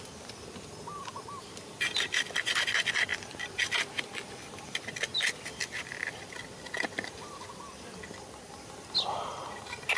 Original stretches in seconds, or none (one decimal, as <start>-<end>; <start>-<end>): 0.0-3.1; 5.0-10.0

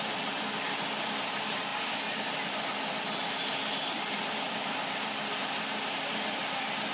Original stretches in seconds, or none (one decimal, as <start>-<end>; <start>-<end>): 0.0-6.9

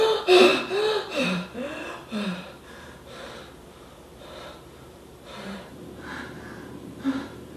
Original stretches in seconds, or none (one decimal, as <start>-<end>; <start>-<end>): none

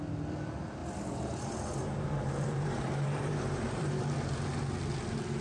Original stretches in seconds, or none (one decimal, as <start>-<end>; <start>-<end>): 0.0-0.8; 4.0-5.4